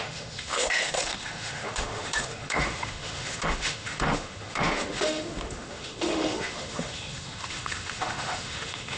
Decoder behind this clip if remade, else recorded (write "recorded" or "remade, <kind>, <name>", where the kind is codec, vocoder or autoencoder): remade, autoencoder, DAC-VAE